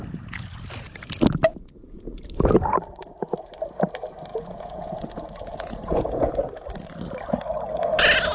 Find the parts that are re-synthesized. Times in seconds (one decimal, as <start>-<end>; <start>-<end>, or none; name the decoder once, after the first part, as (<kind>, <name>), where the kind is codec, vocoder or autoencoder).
1.5-2.2 (vocoder, Vocos); 4.3-6.3